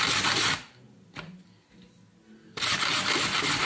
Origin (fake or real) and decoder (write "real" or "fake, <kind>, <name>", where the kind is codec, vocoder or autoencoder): real